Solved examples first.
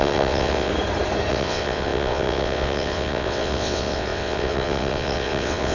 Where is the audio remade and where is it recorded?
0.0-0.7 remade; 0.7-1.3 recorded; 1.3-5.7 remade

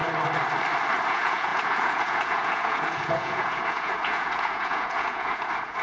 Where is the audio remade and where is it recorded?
0.0-1.1 recorded; 1.1-5.8 remade

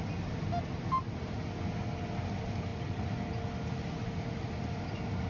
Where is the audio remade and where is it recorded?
0.0-5.3 recorded

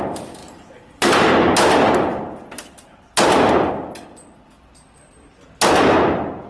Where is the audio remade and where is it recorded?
0.0-0.4 recorded; 0.4-3.7 remade; 3.7-6.5 recorded

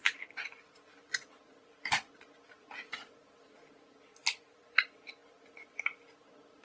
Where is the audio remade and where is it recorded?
0.0-6.6 recorded

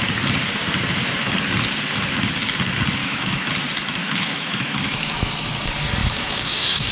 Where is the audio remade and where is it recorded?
0.0-3.0 recorded; 3.0-3.5 remade; 3.5-4.0 recorded; 4.0-5.3 remade; 5.3-6.0 recorded; 6.0-6.9 remade

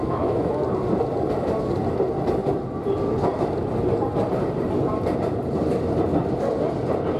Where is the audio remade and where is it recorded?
0.0-0.6 remade; 0.6-7.2 recorded